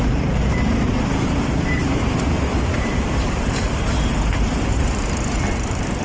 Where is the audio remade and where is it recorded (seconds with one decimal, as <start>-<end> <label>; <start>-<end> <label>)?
0.0-6.0 remade